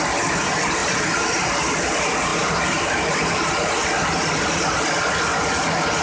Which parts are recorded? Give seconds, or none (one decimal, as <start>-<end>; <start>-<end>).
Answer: 0.0-0.8; 1.5-6.0